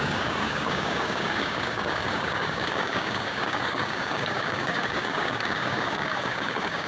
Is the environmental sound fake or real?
fake